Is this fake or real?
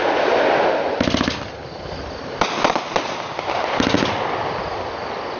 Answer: real